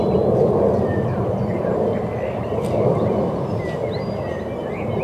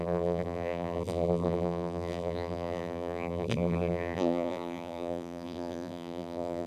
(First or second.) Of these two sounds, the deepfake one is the second